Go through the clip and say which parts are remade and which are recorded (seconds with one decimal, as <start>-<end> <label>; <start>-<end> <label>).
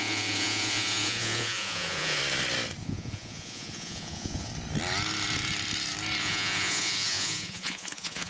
0.0-2.2 remade; 2.2-2.8 recorded; 2.8-4.5 remade; 4.5-6.2 recorded; 6.2-8.3 remade